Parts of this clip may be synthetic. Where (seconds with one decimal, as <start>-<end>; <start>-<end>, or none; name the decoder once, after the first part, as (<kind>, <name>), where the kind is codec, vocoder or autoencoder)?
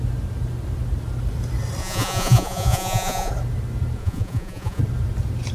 1.8-3.3 (vocoder, Vocos); 4.0-4.8